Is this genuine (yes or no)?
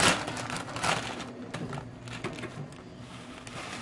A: yes